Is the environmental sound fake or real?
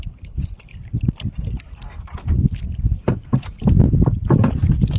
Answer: real